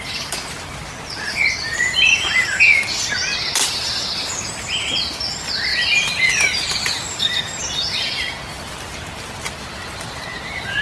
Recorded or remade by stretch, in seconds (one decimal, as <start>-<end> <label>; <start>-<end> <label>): 0.0-10.8 recorded